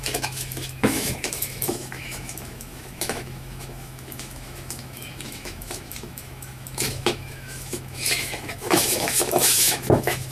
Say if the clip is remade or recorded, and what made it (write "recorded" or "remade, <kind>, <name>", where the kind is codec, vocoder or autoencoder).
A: remade, autoencoder, DAC-VAE